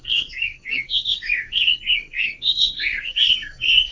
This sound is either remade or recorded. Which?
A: remade